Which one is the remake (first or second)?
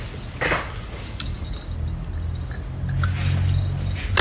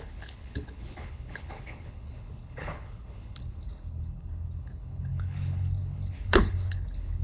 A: second